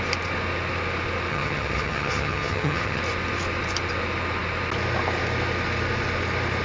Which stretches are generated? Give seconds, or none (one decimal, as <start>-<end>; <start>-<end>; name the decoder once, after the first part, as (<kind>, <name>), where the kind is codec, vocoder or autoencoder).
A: 1.3-3.0 (vocoder, HiFi-GAN)